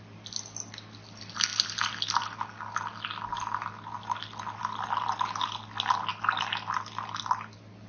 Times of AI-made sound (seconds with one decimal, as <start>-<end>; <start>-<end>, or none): none